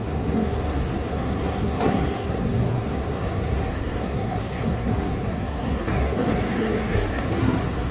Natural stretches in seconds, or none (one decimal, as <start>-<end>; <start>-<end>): none